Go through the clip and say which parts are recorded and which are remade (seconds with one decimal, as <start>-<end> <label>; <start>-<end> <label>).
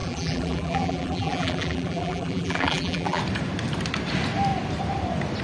0.0-3.2 remade; 3.2-5.4 recorded